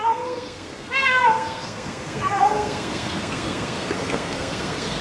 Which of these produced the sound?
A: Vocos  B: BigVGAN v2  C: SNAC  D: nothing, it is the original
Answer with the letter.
C